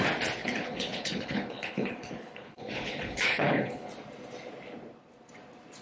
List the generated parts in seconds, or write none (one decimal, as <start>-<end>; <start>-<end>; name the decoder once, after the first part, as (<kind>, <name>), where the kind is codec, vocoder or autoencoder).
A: 0.4-3.9 (codec, HILCodec)